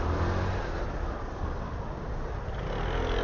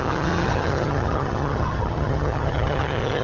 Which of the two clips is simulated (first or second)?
second